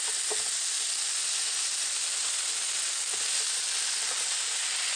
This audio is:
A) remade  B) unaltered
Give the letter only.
B